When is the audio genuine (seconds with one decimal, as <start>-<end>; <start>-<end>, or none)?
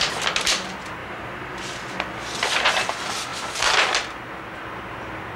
0.0-1.0; 2.5-5.4